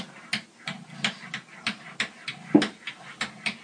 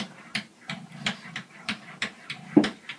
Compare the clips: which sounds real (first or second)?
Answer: first